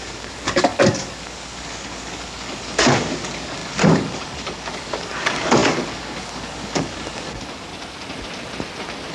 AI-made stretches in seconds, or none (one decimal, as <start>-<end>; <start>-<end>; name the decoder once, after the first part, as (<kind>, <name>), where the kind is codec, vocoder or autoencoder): 0.0-7.7 (codec, DAC)